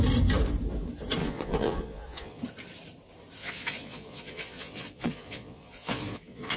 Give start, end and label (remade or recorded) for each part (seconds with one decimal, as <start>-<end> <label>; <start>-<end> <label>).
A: 0.0-1.2 recorded; 1.2-2.4 remade; 2.4-3.4 recorded; 3.4-6.6 remade